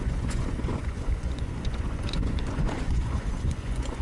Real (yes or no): no